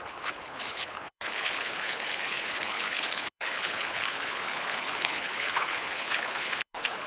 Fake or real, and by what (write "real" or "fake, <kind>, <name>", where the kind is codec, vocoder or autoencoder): fake, codec, HILCodec